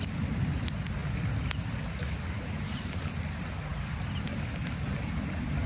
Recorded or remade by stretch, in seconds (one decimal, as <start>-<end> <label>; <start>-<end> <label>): 0.0-5.7 recorded